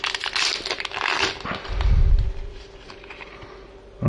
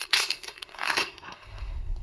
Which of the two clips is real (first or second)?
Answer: first